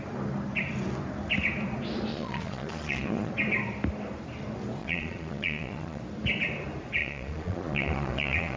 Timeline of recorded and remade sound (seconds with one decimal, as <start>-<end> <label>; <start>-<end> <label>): 0.0-2.1 recorded; 2.1-3.3 remade; 3.3-4.8 recorded; 4.8-6.0 remade; 6.0-7.0 recorded; 7.0-8.6 remade